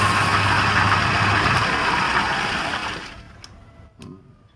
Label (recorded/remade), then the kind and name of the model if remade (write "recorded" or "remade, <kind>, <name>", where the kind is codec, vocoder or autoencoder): recorded